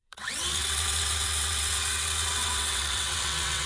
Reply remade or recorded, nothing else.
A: remade